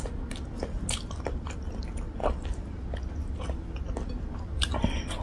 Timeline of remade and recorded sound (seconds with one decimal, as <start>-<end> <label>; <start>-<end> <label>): 0.0-5.2 recorded